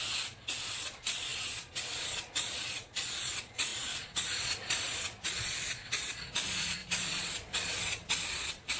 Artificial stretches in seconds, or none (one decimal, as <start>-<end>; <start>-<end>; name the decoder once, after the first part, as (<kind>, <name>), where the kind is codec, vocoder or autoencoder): 0.0-8.8 (vocoder, Vocos)